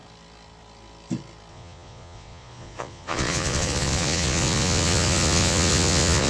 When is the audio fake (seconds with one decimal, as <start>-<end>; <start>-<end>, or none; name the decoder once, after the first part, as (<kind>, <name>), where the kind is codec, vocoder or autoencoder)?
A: 1.5-6.3 (vocoder, Vocos)